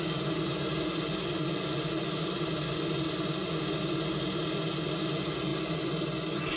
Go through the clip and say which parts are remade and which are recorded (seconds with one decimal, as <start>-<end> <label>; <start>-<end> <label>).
0.0-6.6 recorded